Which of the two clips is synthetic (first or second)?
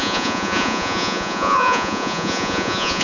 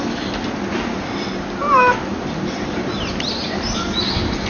first